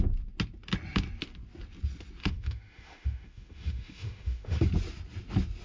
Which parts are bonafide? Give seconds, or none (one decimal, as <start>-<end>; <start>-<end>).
0.0-2.2; 4.6-5.6